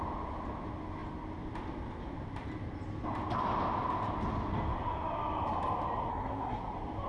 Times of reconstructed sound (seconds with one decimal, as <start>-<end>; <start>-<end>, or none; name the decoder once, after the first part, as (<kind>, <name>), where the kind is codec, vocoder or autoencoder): 6.1-6.6 (codec, SNAC)